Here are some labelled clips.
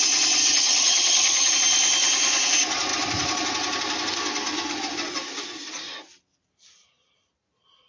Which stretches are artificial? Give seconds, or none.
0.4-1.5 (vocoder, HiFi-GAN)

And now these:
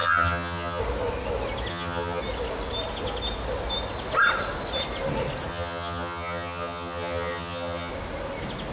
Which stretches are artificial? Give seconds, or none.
0.0-0.8 (vocoder, HiFi-GAN); 1.7-2.2; 5.5-7.9

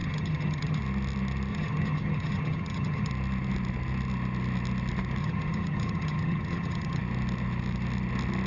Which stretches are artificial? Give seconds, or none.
0.0-0.8 (vocoder, HiFi-GAN); 1.5-3.1; 5.2-7.0

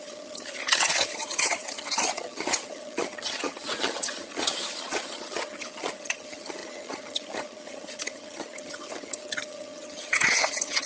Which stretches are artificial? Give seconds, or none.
0.0-10.9 (vocoder, HiFi-GAN)

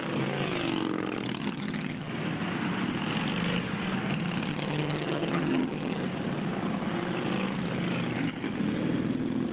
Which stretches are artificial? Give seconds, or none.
1.4-2.1 (vocoder, HiFi-GAN); 4.5-6.0

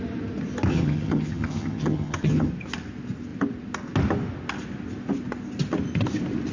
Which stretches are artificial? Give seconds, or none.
0.7-2.5 (vocoder, HiFi-GAN)